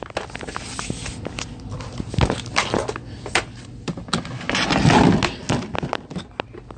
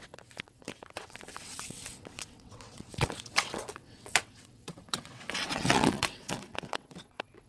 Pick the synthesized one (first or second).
second